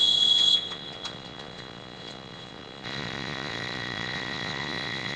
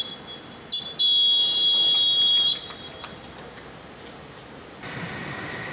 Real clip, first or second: second